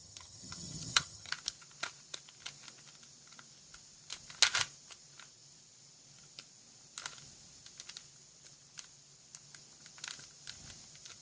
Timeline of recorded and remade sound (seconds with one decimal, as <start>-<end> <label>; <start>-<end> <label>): 0.0-1.3 remade; 1.3-11.2 recorded